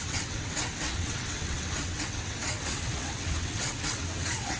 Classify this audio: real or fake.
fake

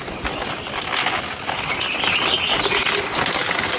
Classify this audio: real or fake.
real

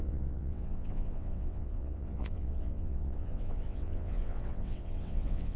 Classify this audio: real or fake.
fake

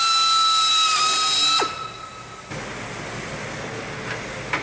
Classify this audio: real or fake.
real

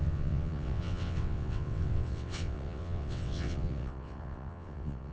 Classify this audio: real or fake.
fake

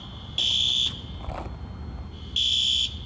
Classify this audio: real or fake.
real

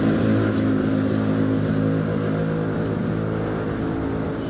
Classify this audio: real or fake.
real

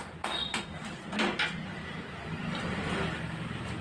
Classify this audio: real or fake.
real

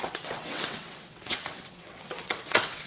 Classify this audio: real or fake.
fake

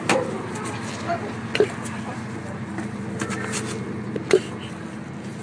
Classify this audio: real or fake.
real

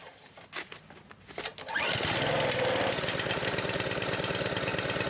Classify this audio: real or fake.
real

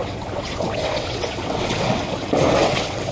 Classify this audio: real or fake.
fake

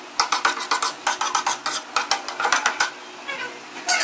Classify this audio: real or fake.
real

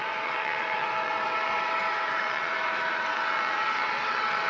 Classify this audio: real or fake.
fake